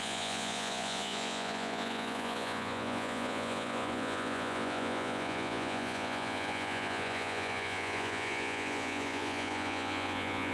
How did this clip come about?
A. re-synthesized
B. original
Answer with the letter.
A